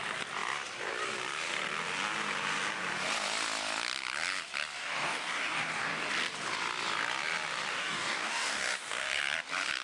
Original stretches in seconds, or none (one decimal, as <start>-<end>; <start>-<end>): 0.0-4.8; 6.1-7.7; 9.2-9.8

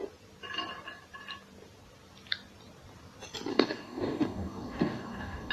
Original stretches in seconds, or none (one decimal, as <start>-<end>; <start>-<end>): 0.0-3.5

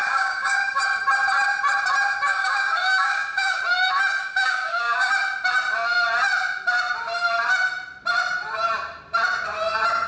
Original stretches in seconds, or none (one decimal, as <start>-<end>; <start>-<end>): 0.8-2.3; 3.6-4.2; 5.1-10.1

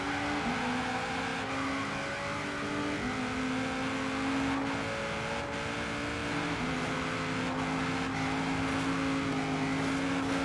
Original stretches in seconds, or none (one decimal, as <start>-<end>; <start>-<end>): 0.0-10.4

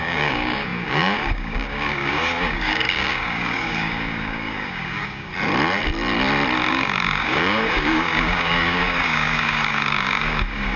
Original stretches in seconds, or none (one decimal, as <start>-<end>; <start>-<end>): 5.3-6.7